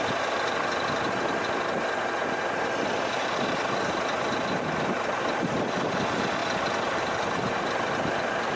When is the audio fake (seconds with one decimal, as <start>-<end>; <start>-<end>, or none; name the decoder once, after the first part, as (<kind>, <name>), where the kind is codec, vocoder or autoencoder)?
none